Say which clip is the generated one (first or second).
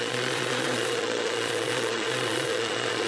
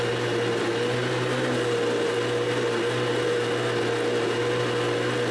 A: first